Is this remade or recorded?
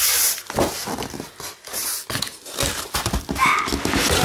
recorded